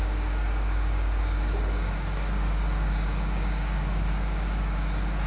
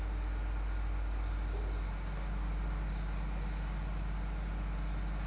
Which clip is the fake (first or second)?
first